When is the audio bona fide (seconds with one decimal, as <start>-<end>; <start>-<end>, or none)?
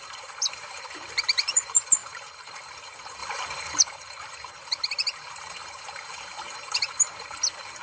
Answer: none